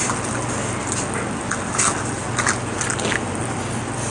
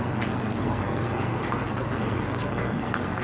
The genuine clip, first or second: first